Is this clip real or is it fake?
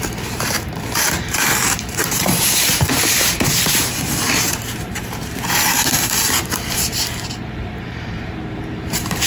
fake